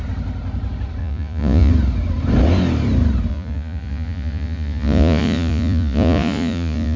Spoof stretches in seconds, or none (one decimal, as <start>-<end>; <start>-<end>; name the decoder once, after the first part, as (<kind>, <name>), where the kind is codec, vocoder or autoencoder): 1.0-1.7 (vocoder, Vocos); 3.3-7.0